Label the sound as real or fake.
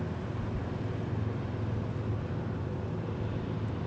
real